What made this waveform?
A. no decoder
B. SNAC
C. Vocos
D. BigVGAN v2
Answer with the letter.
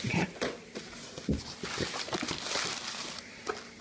A